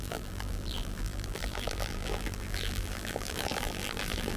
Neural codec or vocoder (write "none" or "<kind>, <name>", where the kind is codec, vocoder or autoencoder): vocoder, BigVGAN v2